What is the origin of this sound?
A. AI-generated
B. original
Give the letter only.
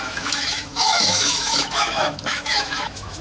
A